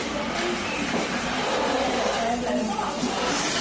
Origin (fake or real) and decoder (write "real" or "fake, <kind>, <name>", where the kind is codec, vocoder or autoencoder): fake, vocoder, BigVGAN v2